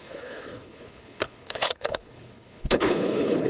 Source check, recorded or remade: remade